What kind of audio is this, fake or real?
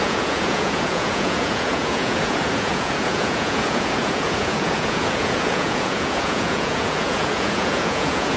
fake